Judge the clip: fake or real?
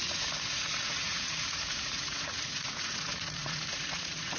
fake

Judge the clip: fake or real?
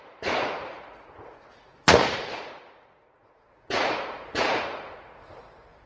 fake